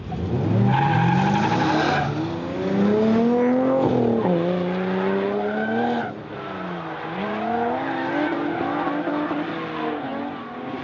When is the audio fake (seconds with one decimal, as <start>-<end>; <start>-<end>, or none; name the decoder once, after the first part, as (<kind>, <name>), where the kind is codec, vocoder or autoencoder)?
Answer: none